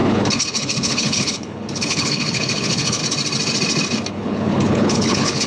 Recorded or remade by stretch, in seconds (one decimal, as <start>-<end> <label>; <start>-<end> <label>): 0.0-3.0 remade; 3.0-4.1 recorded; 4.1-5.5 remade